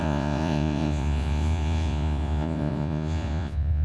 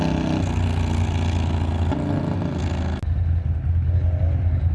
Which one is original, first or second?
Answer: second